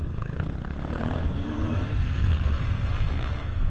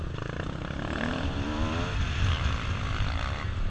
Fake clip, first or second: first